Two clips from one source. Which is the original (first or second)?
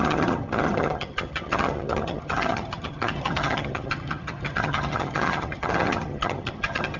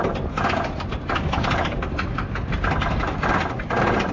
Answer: second